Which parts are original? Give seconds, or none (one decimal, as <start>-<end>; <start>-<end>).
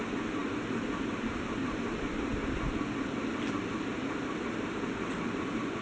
0.4-1.1; 2.3-4.0